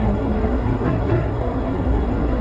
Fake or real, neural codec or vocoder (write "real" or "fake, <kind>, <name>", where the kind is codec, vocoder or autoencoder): fake, codec, SNAC